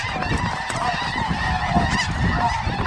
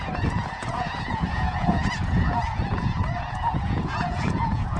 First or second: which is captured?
first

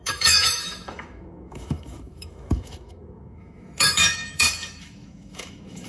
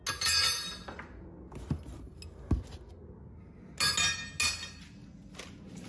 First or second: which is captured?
second